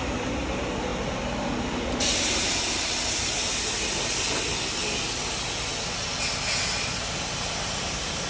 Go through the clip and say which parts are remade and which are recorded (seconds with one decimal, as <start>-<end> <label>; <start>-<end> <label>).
0.0-8.3 recorded